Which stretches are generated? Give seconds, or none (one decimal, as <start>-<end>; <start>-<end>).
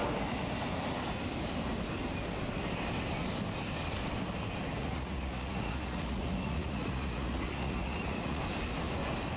4.8-8.4